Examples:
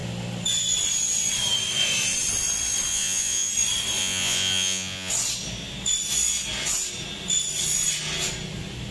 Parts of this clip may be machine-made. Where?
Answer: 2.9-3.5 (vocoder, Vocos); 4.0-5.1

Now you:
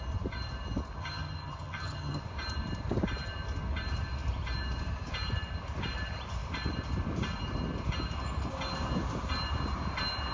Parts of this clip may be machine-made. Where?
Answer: 1.0-2.2 (vocoder, HiFi-GAN)

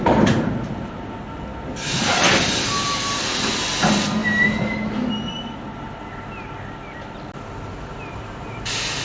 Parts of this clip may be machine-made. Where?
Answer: none

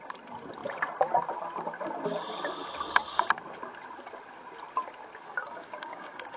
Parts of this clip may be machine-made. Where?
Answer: 5.2-6.4 (codec, DAC)

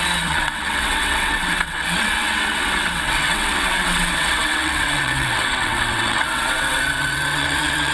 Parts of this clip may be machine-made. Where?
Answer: 0.0-7.9 (vocoder, WaveNeXt)